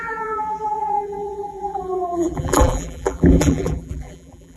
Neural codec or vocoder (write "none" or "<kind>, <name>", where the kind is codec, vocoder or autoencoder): vocoder, BigVGAN v2